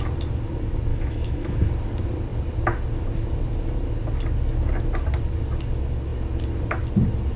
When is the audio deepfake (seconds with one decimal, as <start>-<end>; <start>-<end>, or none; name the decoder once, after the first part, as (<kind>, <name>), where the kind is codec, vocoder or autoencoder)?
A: 0.9-1.7 (autoencoder, DAC-VAE)

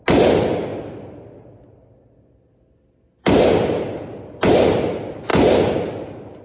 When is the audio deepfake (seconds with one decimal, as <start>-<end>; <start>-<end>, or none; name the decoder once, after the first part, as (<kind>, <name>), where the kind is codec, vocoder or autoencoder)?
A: none

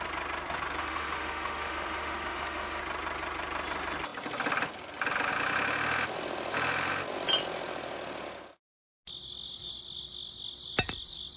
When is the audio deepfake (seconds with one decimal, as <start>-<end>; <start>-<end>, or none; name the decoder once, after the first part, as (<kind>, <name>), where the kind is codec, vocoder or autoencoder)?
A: 0.8-2.8 (autoencoder, DAC-VAE)

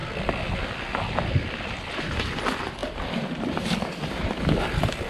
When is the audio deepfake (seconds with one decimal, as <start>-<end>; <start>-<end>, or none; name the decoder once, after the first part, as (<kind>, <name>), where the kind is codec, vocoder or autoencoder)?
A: none

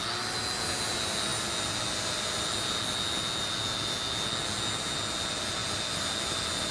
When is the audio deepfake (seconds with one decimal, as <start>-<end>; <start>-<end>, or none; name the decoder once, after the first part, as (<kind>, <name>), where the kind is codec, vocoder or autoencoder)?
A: none

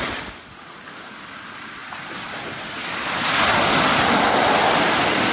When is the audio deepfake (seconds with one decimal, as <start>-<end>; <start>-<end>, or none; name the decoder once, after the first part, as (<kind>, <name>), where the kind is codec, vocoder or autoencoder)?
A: none

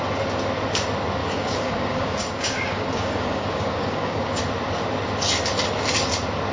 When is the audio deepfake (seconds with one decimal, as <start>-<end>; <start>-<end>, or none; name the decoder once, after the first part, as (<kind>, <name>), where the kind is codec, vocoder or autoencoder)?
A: 1.2-4.4 (codec, DAC)